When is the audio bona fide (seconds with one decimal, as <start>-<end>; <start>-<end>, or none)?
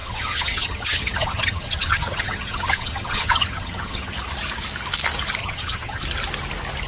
4.1-5.4; 6.0-6.9